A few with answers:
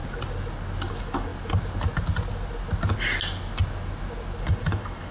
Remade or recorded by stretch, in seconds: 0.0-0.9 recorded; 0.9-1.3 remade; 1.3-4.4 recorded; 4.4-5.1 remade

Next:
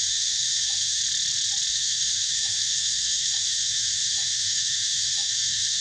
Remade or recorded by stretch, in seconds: 0.0-1.0 remade; 1.0-1.7 recorded; 1.7-5.8 remade